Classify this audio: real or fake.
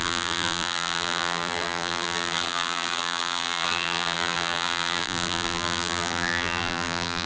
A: fake